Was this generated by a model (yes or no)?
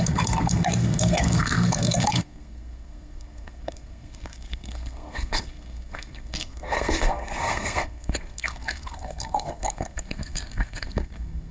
yes